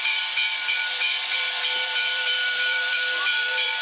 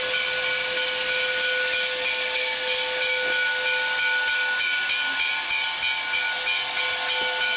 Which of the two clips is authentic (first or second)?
second